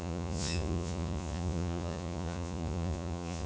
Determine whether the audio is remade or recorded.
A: remade